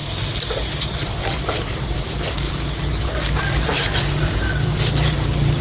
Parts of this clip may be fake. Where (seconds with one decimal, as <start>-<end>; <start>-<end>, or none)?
0.8-5.6